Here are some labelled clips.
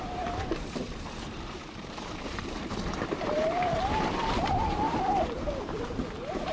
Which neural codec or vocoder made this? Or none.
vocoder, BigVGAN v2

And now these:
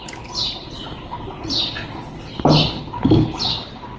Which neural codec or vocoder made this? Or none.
none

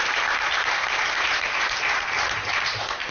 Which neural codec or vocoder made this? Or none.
vocoder, BigVGAN v2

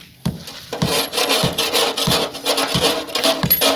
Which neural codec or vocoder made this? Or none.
none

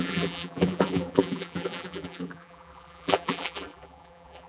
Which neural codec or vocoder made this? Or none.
vocoder, BigVGAN v2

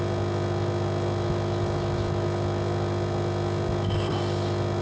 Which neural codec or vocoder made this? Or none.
none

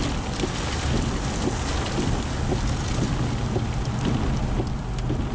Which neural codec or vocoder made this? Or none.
none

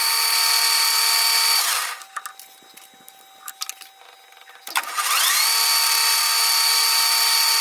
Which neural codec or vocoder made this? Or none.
none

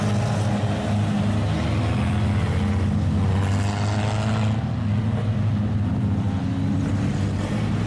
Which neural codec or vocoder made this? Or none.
none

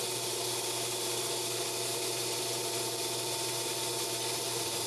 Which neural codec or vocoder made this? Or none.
none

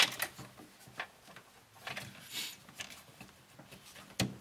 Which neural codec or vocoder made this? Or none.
none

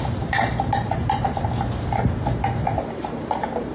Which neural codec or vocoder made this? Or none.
vocoder, BigVGAN v2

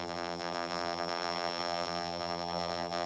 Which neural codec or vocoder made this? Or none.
vocoder, BigVGAN v2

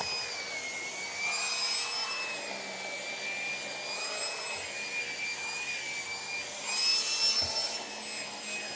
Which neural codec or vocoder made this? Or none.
none